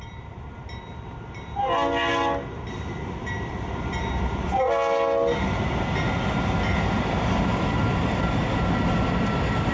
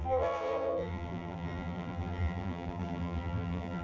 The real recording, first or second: first